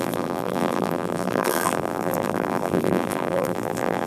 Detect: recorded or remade remade